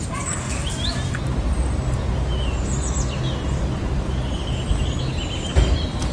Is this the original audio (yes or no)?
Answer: yes